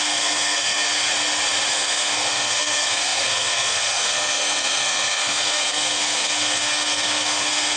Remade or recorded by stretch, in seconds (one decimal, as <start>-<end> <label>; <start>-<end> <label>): 0.0-1.1 remade; 1.1-1.7 recorded; 1.7-7.8 remade